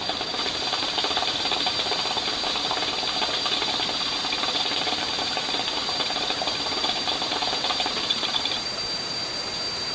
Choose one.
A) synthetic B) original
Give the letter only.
A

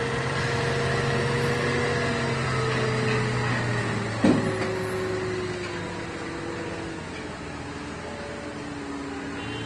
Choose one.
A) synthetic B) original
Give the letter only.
B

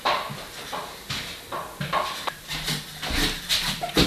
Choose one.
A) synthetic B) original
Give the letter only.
B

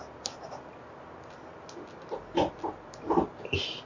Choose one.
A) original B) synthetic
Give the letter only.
A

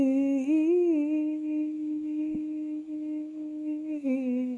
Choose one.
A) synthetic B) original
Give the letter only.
A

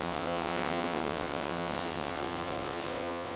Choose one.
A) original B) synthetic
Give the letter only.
B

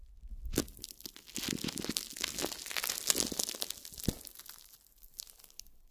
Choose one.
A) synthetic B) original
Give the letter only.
B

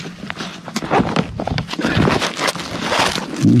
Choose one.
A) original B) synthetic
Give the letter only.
A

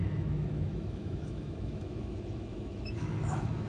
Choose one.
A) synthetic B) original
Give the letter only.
A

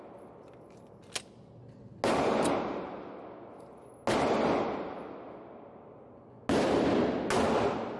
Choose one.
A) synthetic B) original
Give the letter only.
B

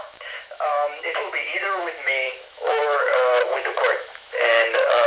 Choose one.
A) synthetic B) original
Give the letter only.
A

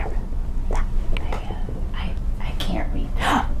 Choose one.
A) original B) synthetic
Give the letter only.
A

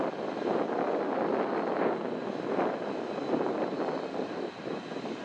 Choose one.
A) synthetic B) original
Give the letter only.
B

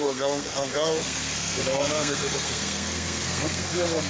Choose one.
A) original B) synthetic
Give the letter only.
B